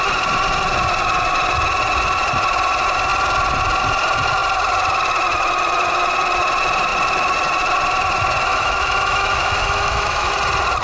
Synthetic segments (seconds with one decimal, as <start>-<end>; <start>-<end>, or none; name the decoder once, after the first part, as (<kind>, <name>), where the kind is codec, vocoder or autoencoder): 8.5-10.3 (autoencoder, DAC-VAE)